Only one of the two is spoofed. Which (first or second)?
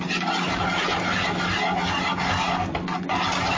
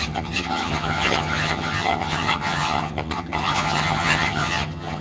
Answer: second